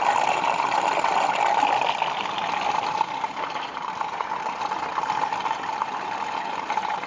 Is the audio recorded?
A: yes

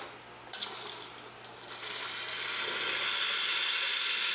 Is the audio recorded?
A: yes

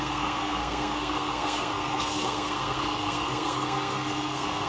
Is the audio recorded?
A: no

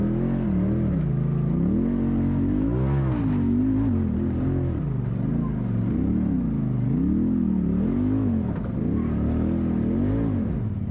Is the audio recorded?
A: yes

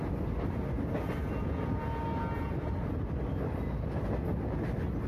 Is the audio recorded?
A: yes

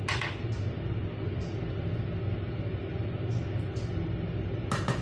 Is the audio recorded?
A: yes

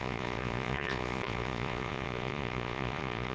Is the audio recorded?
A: no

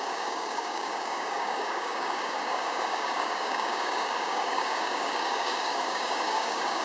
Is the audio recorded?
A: no